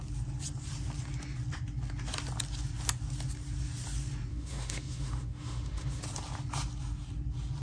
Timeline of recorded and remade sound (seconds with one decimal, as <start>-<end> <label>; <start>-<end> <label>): 0.0-4.3 recorded; 4.3-6.0 remade; 6.0-7.6 recorded